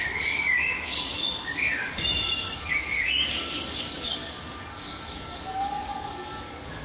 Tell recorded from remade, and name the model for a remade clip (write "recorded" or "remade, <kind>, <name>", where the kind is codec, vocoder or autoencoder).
remade, codec, DAC